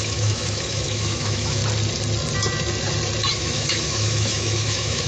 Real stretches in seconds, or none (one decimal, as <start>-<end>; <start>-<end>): 1.6-3.3